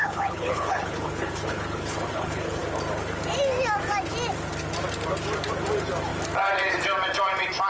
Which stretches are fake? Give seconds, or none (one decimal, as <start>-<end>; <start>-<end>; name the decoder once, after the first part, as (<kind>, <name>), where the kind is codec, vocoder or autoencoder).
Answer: 0.0-2.6 (codec, HILCodec)